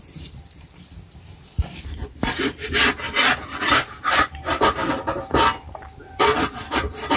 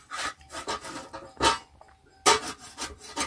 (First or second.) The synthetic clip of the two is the first